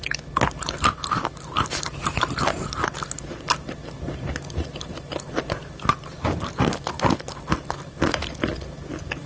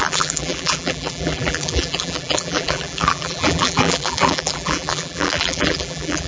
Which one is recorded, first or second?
first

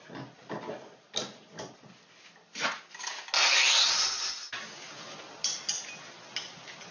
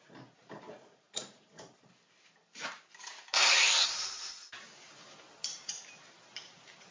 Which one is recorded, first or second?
first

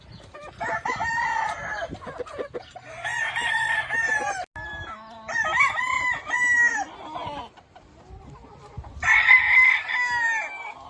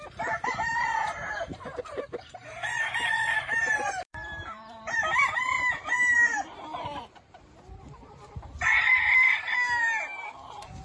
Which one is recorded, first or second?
first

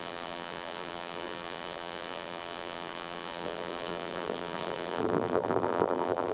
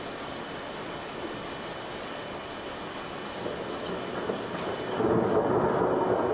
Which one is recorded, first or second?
second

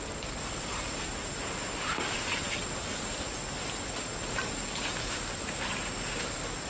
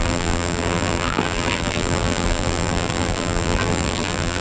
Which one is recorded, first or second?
first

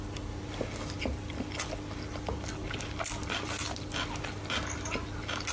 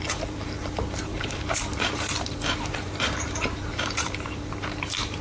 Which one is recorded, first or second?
first